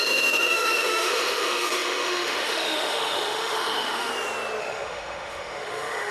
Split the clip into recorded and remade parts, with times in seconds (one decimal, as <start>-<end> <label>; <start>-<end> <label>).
0.0-4.1 remade; 4.1-4.6 recorded; 4.6-6.1 remade